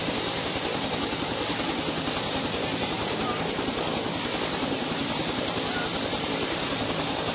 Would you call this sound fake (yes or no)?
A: yes